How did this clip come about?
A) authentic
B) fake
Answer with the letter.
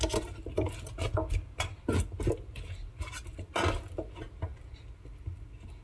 A